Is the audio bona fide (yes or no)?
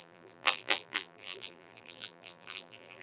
no